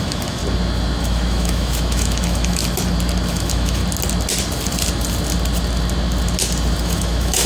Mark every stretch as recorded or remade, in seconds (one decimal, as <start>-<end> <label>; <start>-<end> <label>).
0.0-0.4 remade; 0.4-1.0 recorded; 1.0-2.6 remade; 2.6-3.3 recorded; 3.3-3.8 remade; 3.8-6.8 recorded; 6.8-7.5 remade